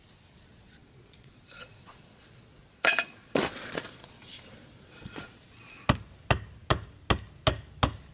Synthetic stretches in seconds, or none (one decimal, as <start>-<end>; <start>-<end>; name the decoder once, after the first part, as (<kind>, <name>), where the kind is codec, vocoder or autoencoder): 0.5-5.4 (vocoder, Vocos)